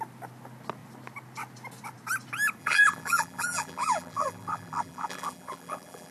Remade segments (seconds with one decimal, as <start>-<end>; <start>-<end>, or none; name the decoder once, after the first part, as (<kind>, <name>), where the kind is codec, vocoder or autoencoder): 2.6-6.1 (vocoder, BigVGAN v2)